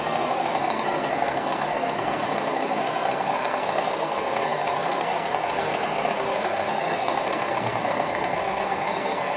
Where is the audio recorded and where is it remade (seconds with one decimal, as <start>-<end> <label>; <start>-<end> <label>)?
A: 0.0-9.4 remade